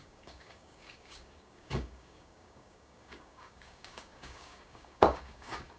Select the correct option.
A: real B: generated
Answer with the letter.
B